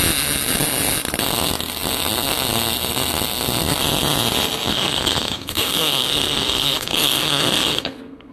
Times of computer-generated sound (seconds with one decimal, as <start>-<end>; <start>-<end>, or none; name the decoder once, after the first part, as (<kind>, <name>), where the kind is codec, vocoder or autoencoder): 4.7-8.3 (codec, SNAC)